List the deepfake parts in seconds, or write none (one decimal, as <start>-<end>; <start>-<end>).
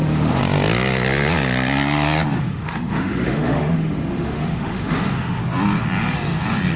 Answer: 0.0-0.4; 2.4-5.4